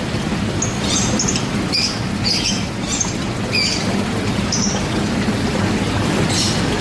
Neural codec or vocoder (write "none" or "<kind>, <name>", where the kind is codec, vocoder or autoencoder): none